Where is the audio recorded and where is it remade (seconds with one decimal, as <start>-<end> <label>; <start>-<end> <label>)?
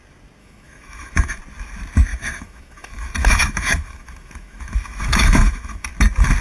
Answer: 0.0-0.4 recorded; 0.4-1.4 remade; 1.4-2.1 recorded; 2.1-5.9 remade; 5.9-6.4 recorded